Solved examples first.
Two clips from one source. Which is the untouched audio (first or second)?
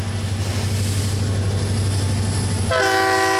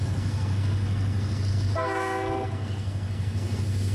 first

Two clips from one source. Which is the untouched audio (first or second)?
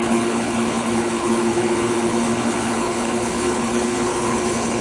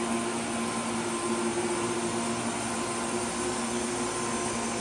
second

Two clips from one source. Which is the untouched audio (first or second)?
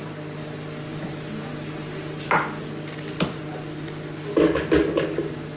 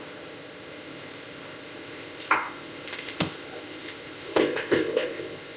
first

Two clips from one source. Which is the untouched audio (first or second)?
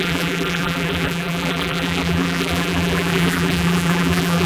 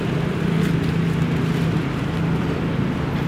second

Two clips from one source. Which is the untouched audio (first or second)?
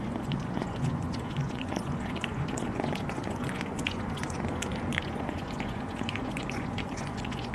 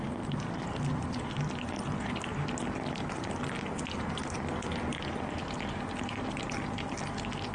second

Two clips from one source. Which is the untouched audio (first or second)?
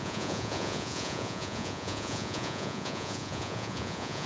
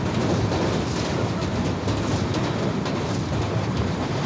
second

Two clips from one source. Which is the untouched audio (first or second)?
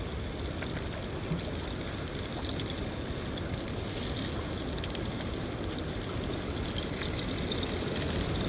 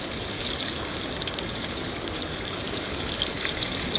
first